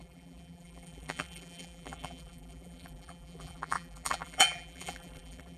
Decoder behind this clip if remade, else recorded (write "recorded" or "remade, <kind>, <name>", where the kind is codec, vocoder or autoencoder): remade, vocoder, BigVGAN v2